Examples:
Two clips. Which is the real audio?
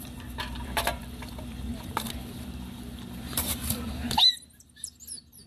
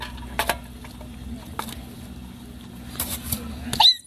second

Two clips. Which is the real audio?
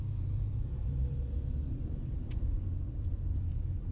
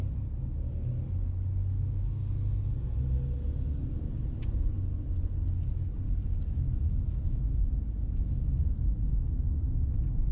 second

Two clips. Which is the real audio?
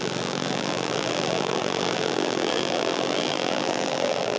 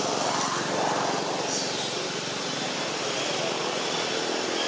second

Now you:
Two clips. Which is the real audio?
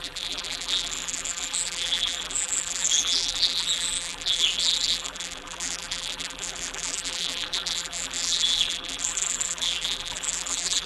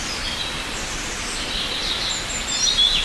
second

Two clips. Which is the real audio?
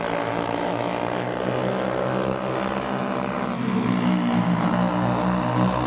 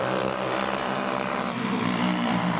first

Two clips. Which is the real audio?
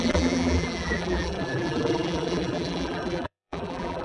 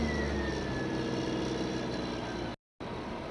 second